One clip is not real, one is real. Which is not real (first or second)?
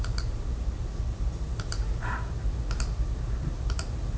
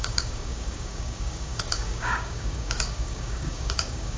second